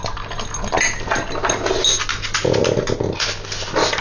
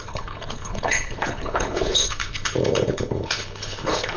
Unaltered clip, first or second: first